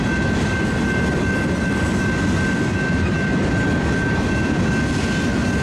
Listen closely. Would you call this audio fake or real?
real